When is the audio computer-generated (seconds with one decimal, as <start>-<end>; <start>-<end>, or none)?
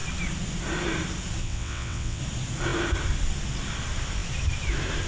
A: 1.4-2.2